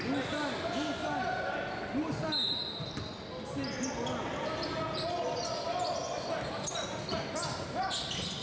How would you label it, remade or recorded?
recorded